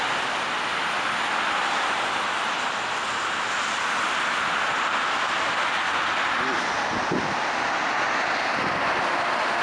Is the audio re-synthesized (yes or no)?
no